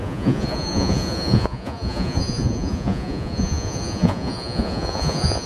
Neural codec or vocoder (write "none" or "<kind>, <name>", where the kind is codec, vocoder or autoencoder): vocoder, Vocos